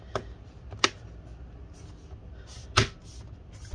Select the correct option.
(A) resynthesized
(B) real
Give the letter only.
B